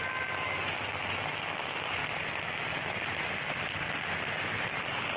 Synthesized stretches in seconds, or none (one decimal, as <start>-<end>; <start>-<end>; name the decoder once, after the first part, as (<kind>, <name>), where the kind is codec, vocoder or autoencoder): none